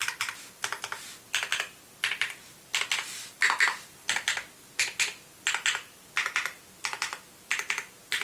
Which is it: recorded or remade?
recorded